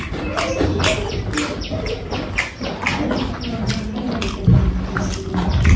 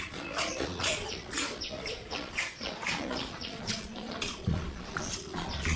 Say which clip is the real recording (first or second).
first